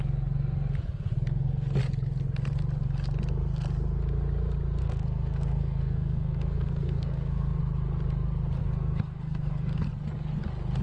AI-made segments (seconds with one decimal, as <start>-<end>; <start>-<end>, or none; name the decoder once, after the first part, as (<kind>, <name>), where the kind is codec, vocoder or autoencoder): 4.8-7.6 (codec, SNAC); 8.6-9.8